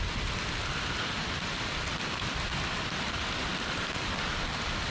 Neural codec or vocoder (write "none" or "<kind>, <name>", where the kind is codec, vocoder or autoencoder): none